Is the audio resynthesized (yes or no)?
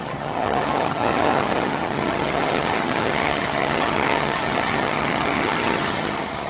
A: yes